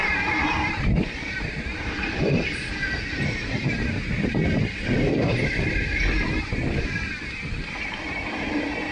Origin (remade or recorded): recorded